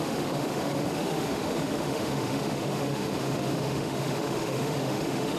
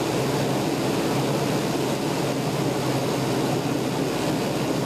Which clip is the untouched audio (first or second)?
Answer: second